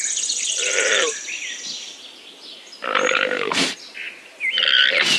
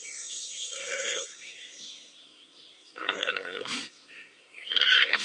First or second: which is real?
first